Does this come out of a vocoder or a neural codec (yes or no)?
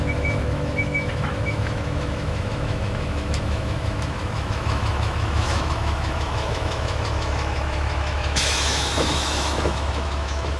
yes